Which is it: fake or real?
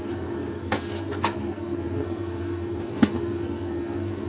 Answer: fake